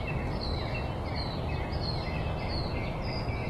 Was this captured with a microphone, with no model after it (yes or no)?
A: yes